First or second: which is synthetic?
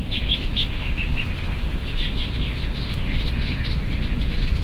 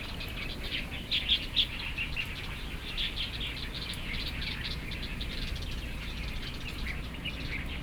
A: first